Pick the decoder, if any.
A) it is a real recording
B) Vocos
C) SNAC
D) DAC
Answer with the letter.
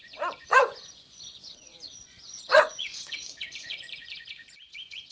B